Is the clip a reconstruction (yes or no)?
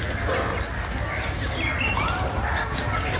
no